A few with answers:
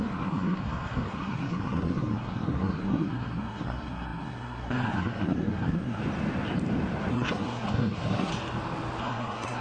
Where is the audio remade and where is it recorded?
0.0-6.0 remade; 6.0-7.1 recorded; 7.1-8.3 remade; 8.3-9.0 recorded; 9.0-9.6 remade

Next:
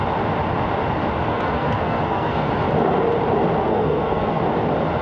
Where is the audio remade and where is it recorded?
0.0-1.3 recorded; 1.3-2.5 remade; 2.5-3.6 recorded; 3.6-4.4 remade; 4.4-5.0 recorded

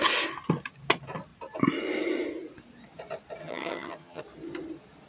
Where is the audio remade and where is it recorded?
0.0-3.4 recorded; 3.4-4.2 remade; 4.2-5.1 recorded

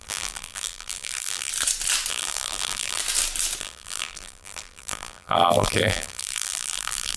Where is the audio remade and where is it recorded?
0.0-1.5 remade; 1.5-2.1 recorded; 2.1-3.0 remade; 3.0-3.6 recorded; 3.6-7.2 remade

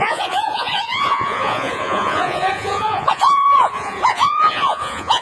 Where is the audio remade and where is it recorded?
0.0-5.2 remade